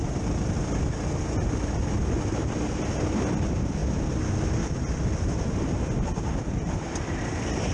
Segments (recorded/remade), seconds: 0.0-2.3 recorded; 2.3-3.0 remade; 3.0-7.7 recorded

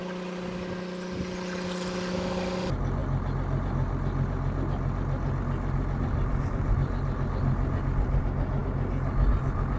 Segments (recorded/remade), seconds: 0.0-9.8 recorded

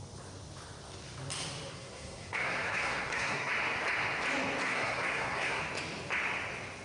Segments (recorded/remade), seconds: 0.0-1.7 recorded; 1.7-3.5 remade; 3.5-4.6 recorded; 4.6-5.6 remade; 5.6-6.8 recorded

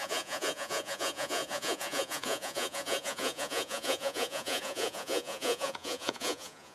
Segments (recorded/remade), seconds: 0.0-6.7 remade